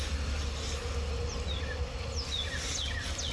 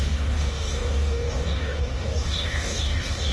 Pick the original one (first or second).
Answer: first